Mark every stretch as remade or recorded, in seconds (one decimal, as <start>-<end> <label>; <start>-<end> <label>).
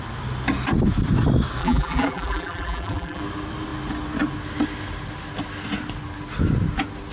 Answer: 0.0-1.6 recorded; 1.6-3.2 remade; 3.2-7.1 recorded